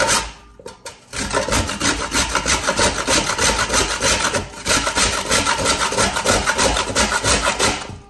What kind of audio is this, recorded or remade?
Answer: recorded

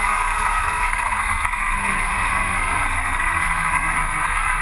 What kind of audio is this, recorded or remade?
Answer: remade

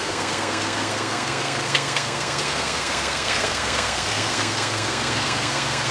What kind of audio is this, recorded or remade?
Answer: remade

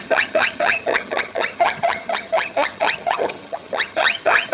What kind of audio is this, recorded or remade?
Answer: remade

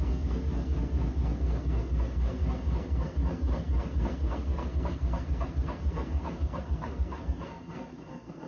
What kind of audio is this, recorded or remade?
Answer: remade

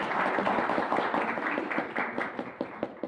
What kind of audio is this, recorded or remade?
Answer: recorded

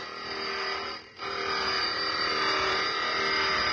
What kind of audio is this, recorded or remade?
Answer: recorded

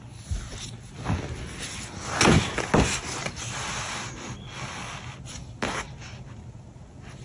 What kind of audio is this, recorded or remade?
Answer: recorded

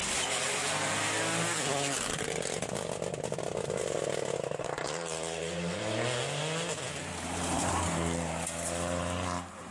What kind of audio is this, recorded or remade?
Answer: recorded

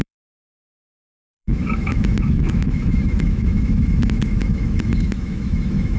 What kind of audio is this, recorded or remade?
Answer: remade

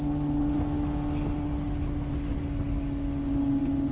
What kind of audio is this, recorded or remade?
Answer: recorded